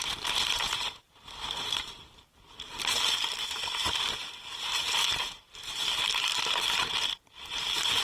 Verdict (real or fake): fake